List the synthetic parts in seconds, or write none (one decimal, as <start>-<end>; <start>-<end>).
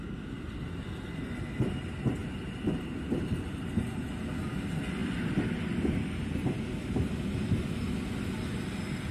none